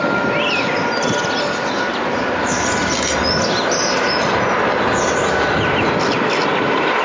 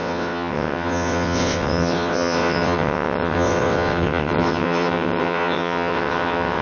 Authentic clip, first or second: first